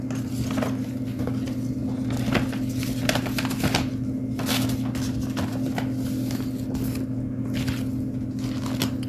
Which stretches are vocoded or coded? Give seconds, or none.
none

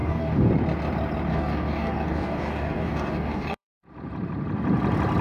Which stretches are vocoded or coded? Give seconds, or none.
0.0-0.5 (codec, DAC); 1.3-3.7

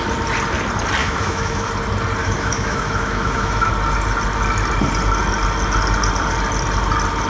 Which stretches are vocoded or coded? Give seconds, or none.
1.0-1.7 (autoencoder, DAC-VAE); 2.2-3.7

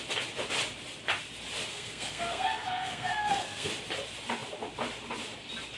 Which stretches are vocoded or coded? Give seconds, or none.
1.7-3.7 (codec, SNAC)

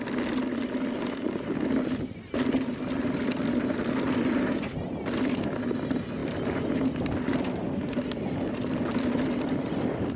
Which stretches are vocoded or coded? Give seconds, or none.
none